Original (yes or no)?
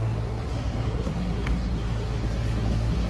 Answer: no